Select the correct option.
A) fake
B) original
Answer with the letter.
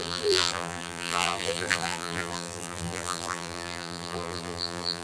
A